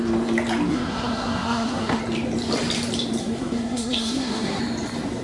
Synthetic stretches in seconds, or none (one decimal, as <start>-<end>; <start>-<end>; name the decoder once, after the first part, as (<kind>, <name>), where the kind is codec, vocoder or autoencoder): 0.7-2.0 (codec, SNAC); 3.2-4.6